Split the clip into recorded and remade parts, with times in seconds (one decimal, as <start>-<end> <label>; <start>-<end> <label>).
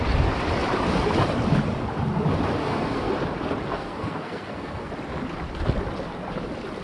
0.0-2.6 recorded; 2.6-3.1 remade; 3.1-3.7 recorded; 3.7-4.9 remade; 4.9-6.8 recorded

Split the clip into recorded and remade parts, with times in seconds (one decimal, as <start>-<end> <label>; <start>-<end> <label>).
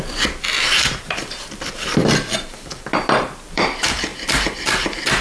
0.0-4.1 remade; 4.1-5.2 recorded